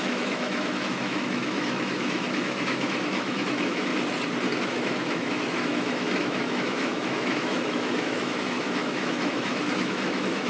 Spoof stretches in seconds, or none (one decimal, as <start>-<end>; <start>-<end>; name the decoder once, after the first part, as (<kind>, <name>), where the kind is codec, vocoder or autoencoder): 0.0-3.9 (autoencoder, DAC-VAE); 4.6-10.5